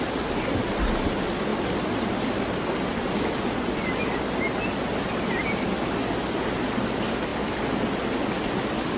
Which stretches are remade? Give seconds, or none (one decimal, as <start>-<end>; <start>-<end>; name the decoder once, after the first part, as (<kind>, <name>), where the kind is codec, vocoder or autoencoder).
none